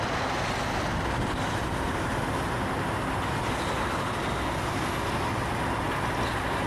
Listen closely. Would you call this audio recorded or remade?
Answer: recorded